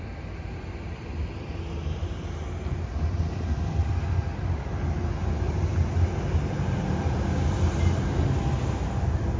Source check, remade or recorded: recorded